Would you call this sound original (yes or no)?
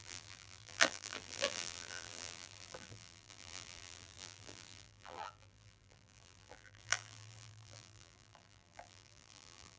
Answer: no